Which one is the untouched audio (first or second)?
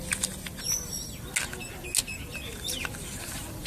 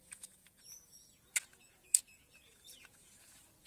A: first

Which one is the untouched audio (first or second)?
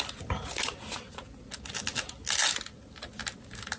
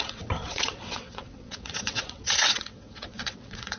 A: first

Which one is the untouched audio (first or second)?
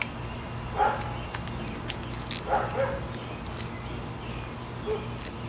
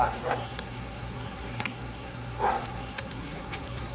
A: first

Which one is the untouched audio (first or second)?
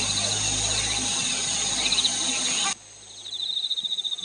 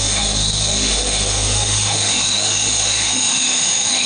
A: first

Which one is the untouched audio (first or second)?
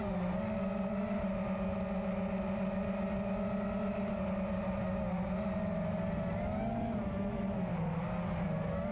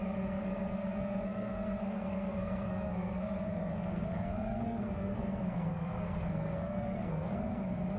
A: first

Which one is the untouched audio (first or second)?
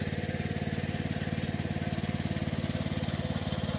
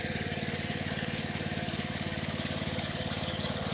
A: first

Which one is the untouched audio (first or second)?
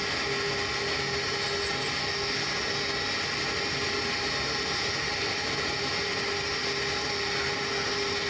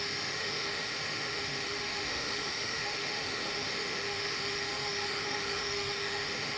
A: first